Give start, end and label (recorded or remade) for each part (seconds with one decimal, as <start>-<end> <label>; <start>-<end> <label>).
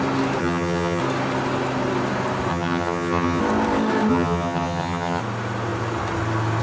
0.0-0.4 recorded; 0.4-1.0 remade; 1.0-2.5 recorded; 2.5-3.4 remade; 3.4-4.1 recorded; 4.1-5.2 remade; 5.2-6.6 recorded